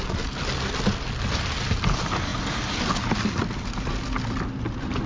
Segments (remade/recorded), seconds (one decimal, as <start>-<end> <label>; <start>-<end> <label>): 0.0-5.1 recorded